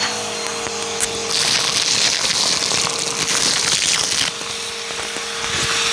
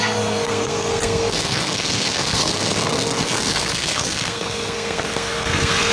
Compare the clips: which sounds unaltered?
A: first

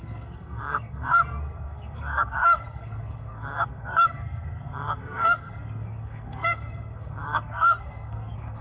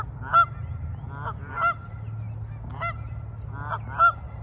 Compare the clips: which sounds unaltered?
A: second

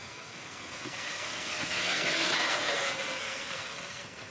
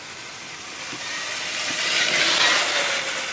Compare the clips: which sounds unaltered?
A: second